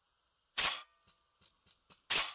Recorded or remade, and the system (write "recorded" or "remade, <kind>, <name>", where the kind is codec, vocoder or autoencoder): recorded